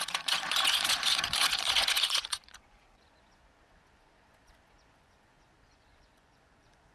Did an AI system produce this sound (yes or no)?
yes